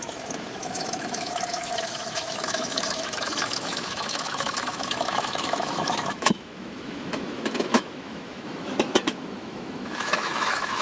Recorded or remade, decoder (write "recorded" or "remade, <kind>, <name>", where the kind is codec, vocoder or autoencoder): remade, autoencoder, DAC-VAE